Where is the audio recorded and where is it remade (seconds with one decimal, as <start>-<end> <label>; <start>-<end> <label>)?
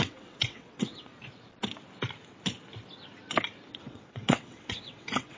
0.0-1.1 remade; 1.1-3.7 recorded; 3.7-5.4 remade